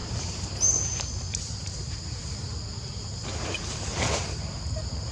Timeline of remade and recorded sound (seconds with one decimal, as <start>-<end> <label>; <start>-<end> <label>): 0.0-0.5 remade; 0.5-5.1 recorded